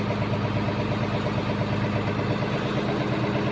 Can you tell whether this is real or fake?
real